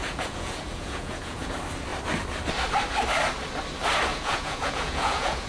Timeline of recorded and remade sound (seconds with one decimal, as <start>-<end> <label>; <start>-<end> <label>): 0.0-1.5 remade; 1.5-4.1 recorded; 4.1-5.5 remade

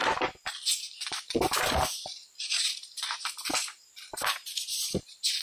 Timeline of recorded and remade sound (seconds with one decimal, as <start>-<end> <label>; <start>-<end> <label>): 0.0-1.4 remade; 1.4-2.2 recorded; 2.2-5.4 remade

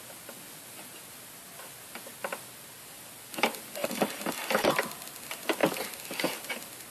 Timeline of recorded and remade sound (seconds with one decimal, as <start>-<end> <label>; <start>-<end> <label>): 0.0-3.8 recorded; 3.8-4.7 remade; 4.7-6.9 recorded

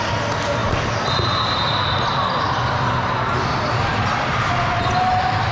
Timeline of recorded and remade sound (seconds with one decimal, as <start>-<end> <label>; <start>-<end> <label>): 0.0-5.5 recorded

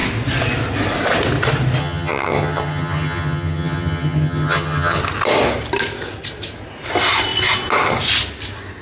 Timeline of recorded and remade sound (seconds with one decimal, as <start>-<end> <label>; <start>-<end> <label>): 0.0-1.8 recorded; 1.8-5.0 remade; 5.0-8.8 recorded